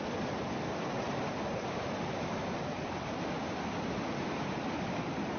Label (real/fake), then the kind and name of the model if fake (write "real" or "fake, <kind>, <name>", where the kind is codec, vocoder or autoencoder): real